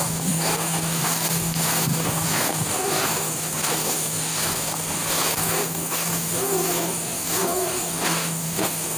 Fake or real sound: fake